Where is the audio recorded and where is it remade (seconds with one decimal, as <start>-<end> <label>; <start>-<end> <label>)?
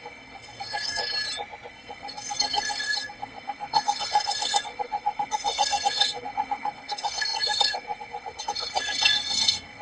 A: 0.0-1.0 remade; 1.0-1.7 recorded; 1.7-9.8 remade